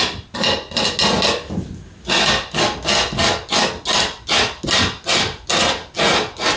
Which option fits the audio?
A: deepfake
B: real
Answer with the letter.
B